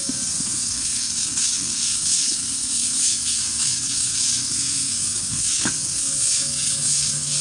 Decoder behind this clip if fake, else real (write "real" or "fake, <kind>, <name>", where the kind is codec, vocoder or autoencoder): fake, codec, SNAC